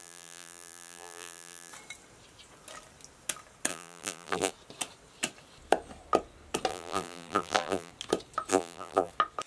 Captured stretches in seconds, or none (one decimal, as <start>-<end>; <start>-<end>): 1.7-3.7; 4.5-6.7; 7.9-8.5; 9.1-9.5